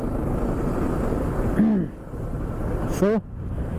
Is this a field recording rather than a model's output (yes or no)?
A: yes